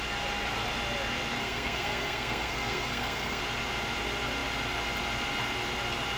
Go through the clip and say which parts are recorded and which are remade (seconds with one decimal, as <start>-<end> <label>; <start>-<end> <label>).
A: 0.0-1.4 recorded; 1.4-3.4 remade; 3.4-6.2 recorded